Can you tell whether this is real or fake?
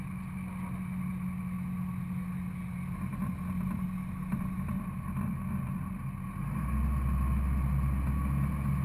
real